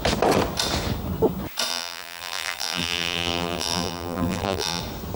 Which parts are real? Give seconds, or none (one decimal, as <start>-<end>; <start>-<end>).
0.0-1.7; 4.8-5.2